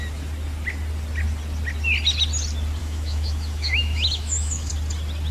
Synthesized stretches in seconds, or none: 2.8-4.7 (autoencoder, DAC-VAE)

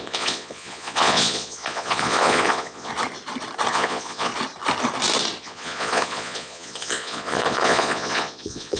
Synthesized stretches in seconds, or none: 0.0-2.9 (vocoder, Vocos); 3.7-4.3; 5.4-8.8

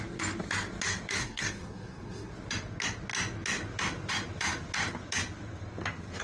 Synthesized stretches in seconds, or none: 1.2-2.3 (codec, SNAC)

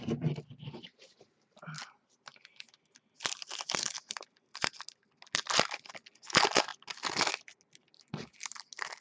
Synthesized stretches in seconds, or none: none